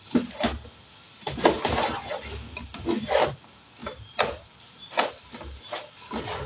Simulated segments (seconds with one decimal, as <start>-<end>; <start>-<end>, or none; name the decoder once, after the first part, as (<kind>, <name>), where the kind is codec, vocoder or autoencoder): 3.8-5.1 (vocoder, BigVGAN v2)